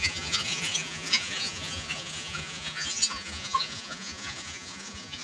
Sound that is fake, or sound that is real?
fake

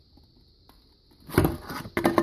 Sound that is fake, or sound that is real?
real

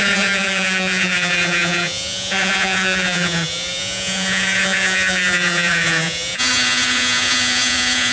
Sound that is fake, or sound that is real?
fake